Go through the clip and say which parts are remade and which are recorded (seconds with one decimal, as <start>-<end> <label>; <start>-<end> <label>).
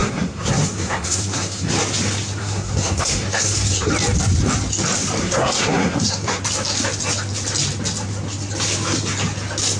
0.0-1.7 remade; 1.7-2.4 recorded; 2.4-3.9 remade; 3.9-5.2 recorded; 5.2-6.4 remade; 6.4-9.8 recorded